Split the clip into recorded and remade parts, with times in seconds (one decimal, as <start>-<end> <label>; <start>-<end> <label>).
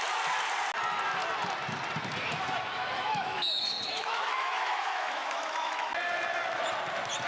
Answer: 0.0-3.0 recorded; 3.0-5.9 remade; 5.9-7.3 recorded